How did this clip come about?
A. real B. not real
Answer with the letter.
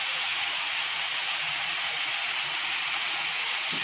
B